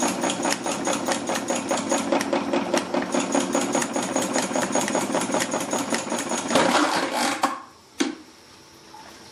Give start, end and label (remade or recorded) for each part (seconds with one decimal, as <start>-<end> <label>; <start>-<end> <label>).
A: 0.0-3.8 recorded; 3.8-6.6 remade; 6.6-7.8 recorded; 7.8-8.5 remade; 8.5-9.3 recorded